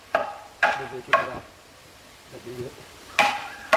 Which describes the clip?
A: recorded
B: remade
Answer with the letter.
B